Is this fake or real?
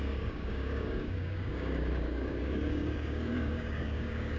fake